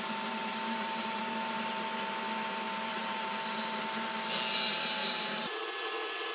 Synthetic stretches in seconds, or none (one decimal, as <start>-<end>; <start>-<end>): 0.4-1.2; 2.9-3.8; 5.0-5.6